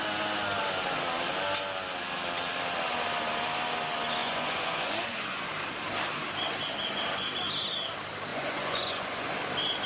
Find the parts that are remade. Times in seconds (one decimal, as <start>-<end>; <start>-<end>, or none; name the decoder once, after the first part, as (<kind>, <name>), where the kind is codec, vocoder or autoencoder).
4.2-5.5 (vocoder, Vocos); 8.3-9.3